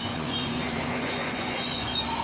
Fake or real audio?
fake